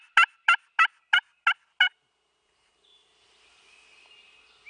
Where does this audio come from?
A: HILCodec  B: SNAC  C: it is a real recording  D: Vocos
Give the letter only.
C